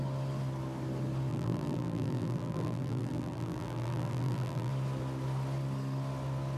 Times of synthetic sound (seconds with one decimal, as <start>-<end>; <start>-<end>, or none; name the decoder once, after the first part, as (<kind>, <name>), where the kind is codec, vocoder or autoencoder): 1.3-4.7 (vocoder, BigVGAN v2)